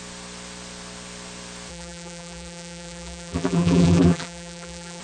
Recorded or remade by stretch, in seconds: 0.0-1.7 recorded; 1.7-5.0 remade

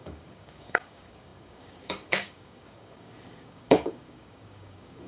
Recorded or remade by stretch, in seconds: 0.0-5.1 remade